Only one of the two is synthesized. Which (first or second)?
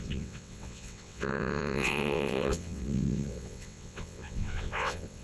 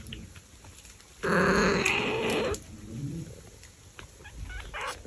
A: first